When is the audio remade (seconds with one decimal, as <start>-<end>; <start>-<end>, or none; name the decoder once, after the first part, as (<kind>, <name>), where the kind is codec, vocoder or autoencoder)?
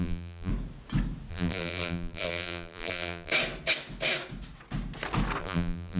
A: 0.0-0.5 (vocoder, BigVGAN v2); 1.3-3.3; 5.4-6.0